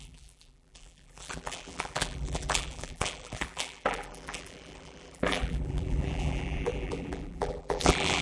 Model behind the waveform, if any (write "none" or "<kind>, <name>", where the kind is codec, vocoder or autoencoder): vocoder, BigVGAN v2